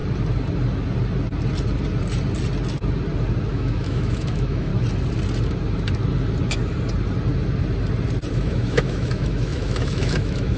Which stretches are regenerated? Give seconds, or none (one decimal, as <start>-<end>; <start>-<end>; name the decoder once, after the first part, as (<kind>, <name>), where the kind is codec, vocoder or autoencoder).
3.5-4.7 (autoencoder, DAC-VAE); 8.3-10.6